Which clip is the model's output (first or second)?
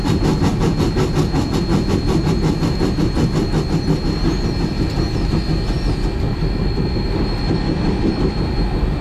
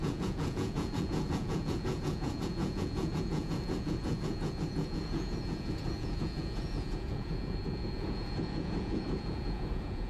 second